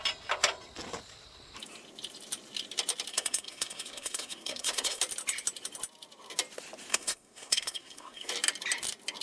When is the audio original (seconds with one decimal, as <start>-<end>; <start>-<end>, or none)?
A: 0.0-3.1; 5.0-6.9; 8.3-9.2